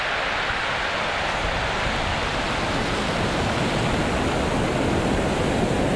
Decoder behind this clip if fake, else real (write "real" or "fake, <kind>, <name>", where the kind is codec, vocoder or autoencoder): real